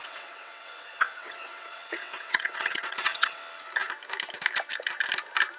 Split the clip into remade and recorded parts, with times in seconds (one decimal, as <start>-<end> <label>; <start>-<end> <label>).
0.0-3.4 remade; 3.4-5.6 recorded